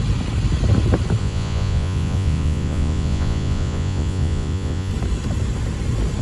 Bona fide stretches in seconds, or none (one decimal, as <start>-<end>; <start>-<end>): 0.0-1.2; 4.9-6.2